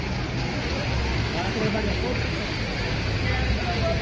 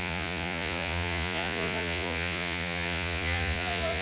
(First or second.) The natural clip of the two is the first